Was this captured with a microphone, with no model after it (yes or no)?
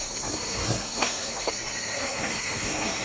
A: no